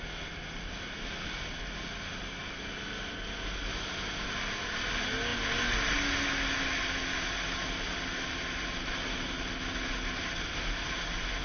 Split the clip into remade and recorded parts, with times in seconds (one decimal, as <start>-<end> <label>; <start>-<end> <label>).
0.0-11.4 recorded